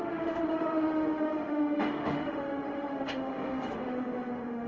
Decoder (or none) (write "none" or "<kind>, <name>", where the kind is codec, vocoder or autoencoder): autoencoder, DAC-VAE